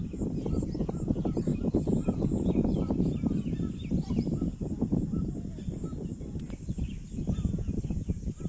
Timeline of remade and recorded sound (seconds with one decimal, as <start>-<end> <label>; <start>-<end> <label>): 0.0-8.5 recorded